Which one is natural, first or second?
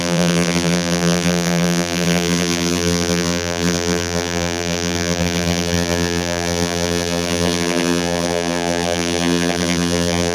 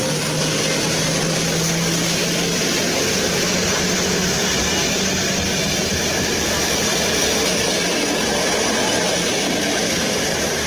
second